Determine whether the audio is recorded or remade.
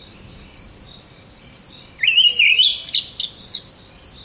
recorded